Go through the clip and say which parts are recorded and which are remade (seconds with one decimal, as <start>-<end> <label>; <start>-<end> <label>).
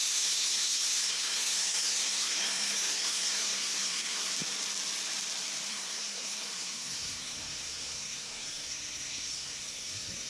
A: 0.0-4.3 remade; 4.3-5.7 recorded; 5.7-10.3 remade